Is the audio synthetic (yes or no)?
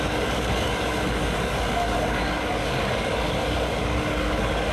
yes